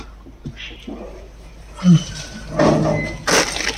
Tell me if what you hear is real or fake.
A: real